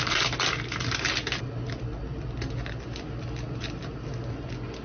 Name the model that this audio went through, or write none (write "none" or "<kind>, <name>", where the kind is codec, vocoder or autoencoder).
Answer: none